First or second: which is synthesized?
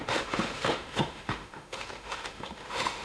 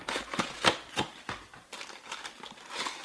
first